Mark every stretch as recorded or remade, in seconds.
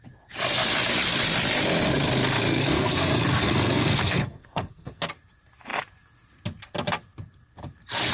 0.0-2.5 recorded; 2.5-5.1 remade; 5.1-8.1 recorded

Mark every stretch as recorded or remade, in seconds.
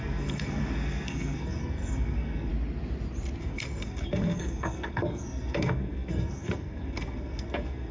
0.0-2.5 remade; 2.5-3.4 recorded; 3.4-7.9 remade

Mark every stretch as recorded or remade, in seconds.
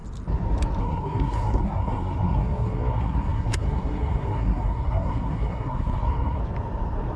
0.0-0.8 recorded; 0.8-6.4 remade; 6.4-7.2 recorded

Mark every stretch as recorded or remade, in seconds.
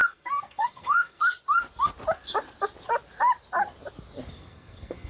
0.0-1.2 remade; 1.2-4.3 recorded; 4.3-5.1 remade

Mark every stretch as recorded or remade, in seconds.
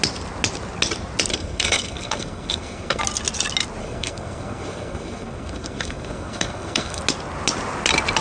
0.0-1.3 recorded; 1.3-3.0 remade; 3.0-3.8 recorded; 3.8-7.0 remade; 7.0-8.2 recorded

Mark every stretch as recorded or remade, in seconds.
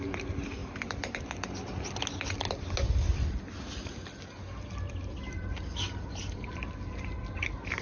0.0-7.8 recorded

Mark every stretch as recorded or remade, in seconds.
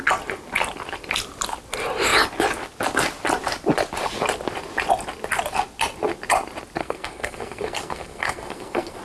0.0-6.8 recorded; 6.8-9.0 remade